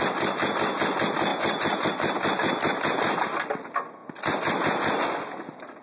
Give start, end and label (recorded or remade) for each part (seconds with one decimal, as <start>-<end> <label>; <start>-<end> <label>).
0.0-1.3 recorded; 1.3-1.9 remade; 1.9-5.8 recorded

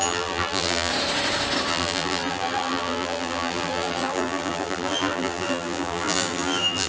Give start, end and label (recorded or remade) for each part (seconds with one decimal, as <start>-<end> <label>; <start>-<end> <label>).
0.0-0.9 remade; 0.9-1.7 recorded; 1.7-6.9 remade

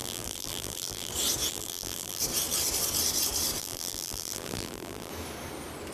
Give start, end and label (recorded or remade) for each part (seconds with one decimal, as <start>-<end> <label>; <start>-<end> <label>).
0.0-1.1 remade; 1.1-1.5 recorded; 1.5-2.2 remade; 2.2-3.6 recorded; 3.6-5.1 remade; 5.1-5.9 recorded

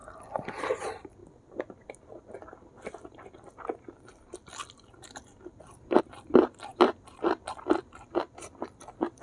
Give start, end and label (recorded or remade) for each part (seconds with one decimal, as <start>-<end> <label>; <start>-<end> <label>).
0.0-0.6 recorded; 0.6-9.2 remade